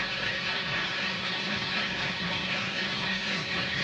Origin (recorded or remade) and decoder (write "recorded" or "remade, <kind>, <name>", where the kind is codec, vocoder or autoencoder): remade, codec, SNAC